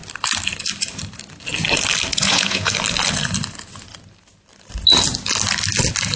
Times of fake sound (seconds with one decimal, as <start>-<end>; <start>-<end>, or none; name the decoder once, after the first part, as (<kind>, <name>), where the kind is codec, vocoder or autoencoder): 2.1-2.7 (vocoder, Vocos)